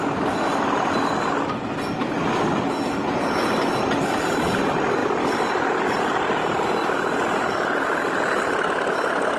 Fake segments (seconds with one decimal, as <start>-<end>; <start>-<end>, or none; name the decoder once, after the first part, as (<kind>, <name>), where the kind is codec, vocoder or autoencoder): none